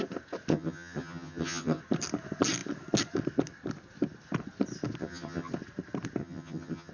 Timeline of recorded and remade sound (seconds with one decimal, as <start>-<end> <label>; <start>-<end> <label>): 0.0-0.5 recorded; 0.5-1.8 remade; 1.8-5.0 recorded; 5.0-5.5 remade; 5.5-6.2 recorded; 6.2-6.9 remade